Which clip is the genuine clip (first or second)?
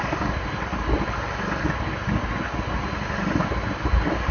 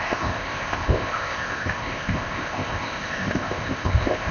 first